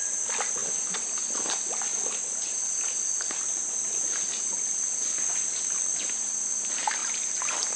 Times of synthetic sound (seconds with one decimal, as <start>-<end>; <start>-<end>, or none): none